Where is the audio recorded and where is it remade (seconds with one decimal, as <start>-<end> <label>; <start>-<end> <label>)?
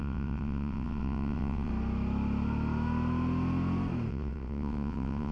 0.0-1.7 remade; 1.7-4.1 recorded; 4.1-5.3 remade